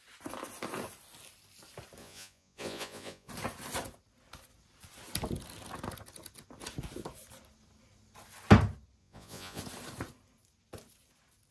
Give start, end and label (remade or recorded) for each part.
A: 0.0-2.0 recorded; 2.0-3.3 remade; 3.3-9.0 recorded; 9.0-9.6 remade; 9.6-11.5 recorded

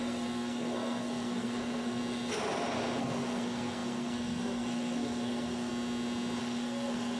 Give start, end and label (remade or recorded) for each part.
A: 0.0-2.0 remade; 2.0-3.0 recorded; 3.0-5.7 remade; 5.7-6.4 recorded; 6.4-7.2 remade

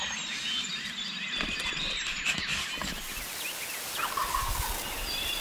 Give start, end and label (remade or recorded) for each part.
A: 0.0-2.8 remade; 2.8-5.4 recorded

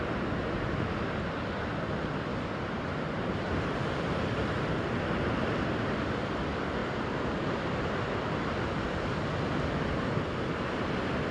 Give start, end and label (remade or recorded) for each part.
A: 0.0-2.3 recorded; 2.3-6.3 remade; 6.3-6.8 recorded; 6.8-7.6 remade; 7.6-11.3 recorded

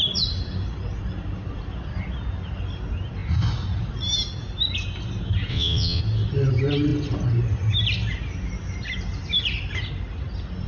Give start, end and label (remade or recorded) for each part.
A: 0.0-5.5 recorded; 5.5-6.0 remade; 6.0-10.7 recorded

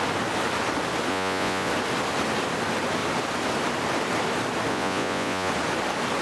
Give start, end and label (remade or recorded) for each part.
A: 0.0-1.1 recorded; 1.1-1.7 remade; 1.7-4.7 recorded; 4.7-5.5 remade; 5.5-6.2 recorded

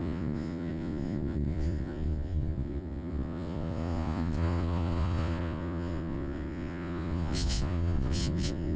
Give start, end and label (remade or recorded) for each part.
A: 0.0-8.8 remade